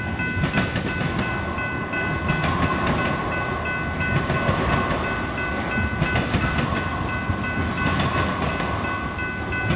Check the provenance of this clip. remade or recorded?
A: recorded